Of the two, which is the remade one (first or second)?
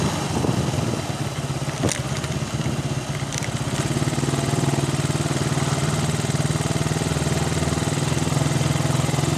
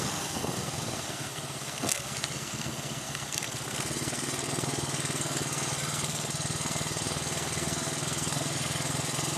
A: second